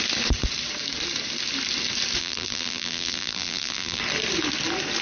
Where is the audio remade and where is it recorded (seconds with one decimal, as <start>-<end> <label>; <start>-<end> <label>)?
0.0-2.2 recorded; 2.2-4.0 remade; 4.0-5.0 recorded